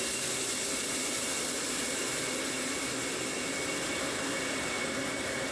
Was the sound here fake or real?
real